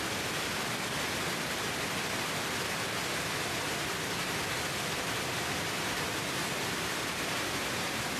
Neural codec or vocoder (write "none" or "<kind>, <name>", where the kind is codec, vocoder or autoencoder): none